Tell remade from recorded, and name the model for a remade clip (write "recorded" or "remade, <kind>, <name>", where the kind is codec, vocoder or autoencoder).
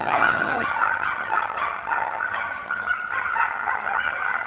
remade, vocoder, HiFi-GAN